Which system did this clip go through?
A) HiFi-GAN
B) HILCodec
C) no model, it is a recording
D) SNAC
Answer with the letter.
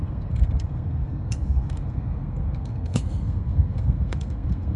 D